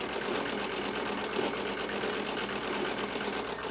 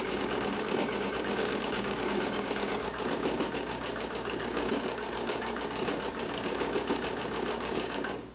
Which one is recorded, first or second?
first